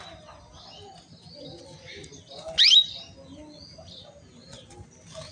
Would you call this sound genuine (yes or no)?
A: yes